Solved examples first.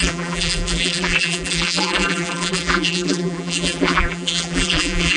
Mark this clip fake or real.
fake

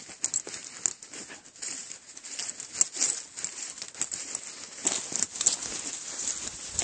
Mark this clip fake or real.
real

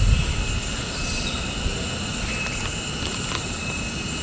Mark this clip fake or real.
real